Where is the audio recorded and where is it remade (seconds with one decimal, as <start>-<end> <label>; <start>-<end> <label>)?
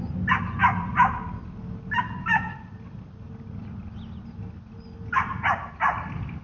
0.0-6.4 recorded